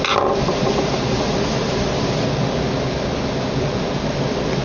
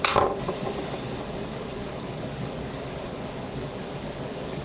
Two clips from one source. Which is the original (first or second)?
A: first